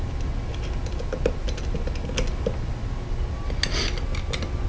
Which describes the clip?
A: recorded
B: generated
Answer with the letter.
A